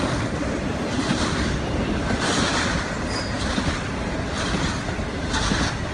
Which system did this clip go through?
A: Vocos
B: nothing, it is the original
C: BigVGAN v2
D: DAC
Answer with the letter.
C